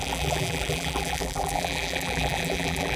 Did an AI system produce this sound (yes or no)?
yes